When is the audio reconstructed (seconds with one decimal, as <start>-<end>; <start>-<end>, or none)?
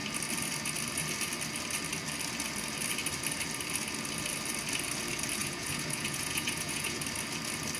5.4-7.0